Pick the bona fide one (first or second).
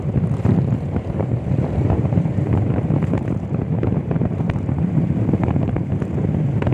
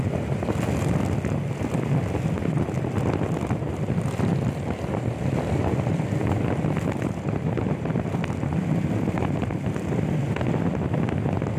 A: second